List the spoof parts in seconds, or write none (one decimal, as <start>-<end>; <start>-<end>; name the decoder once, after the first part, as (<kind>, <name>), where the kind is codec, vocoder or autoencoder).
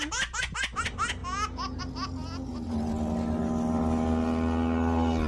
none